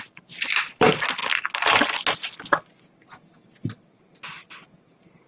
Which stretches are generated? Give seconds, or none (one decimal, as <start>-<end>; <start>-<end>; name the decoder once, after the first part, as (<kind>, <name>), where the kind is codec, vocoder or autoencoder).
none